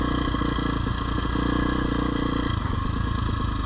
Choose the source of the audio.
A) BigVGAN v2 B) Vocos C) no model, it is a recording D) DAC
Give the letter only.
C